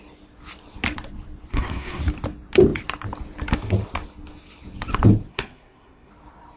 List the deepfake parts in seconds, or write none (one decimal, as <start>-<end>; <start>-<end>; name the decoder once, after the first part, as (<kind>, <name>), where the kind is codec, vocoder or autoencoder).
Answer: 1.5-2.0 (codec, SNAC); 5.3-6.1